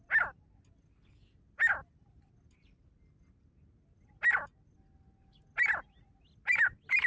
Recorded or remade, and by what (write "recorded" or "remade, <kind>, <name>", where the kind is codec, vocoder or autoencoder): recorded